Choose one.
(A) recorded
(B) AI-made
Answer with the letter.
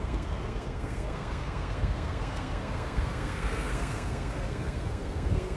B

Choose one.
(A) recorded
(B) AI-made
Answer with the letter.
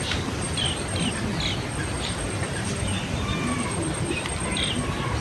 A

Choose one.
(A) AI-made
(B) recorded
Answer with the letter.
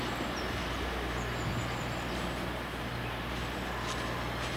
B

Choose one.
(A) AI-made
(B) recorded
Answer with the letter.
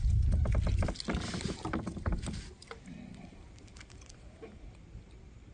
B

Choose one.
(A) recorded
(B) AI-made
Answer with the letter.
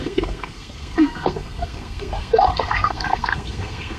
B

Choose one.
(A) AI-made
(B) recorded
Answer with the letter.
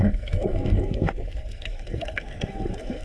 A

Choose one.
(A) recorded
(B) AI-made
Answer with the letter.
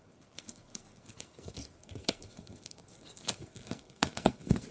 B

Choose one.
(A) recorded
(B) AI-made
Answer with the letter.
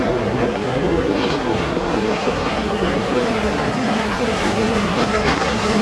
B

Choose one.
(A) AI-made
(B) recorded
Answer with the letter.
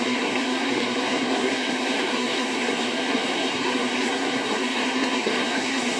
A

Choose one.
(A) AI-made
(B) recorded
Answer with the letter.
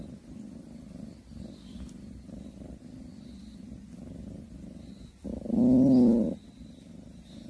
B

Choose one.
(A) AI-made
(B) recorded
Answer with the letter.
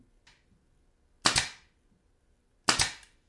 B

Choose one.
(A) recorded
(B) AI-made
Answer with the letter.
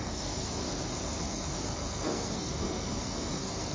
B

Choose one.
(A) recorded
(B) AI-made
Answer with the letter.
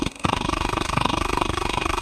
B